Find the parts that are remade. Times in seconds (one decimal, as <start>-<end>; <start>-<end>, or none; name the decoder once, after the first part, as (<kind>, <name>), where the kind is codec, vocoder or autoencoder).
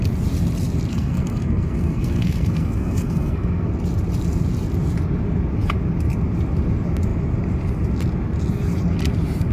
0.9-3.7 (codec, SNAC)